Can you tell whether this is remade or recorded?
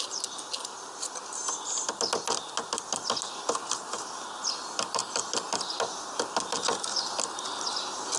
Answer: recorded